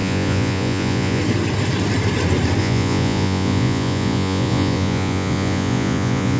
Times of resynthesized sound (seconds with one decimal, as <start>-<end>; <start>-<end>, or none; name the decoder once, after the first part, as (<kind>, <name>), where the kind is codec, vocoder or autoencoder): 0.0-1.2 (vocoder, Vocos); 2.6-6.4